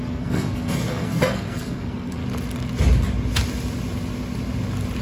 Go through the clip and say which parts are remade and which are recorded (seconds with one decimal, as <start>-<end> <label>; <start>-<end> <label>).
0.0-2.2 remade; 2.2-5.0 recorded